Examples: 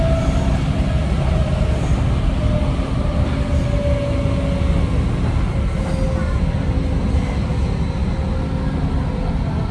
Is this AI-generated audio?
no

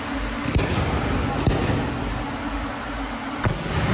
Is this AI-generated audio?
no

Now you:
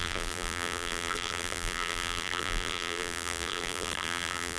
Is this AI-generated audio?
yes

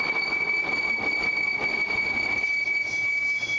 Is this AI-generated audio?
no